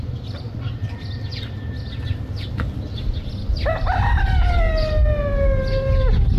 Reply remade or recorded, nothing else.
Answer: recorded